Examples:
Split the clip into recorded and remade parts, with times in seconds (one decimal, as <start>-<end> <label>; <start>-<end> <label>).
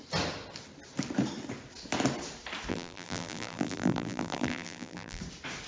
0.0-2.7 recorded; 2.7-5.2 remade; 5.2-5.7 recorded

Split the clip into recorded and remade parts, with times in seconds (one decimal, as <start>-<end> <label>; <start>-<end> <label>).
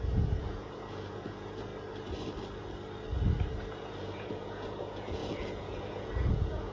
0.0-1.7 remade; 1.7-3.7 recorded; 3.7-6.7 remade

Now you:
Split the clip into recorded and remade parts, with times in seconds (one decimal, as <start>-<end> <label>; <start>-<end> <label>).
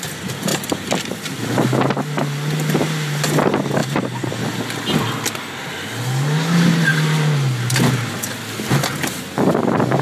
0.0-0.5 recorded; 0.5-1.4 remade; 1.4-3.8 recorded; 3.8-4.4 remade; 4.4-10.0 recorded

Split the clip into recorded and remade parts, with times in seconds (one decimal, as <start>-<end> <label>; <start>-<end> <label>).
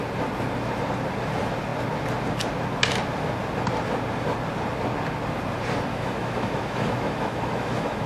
0.0-5.9 recorded; 5.9-8.1 remade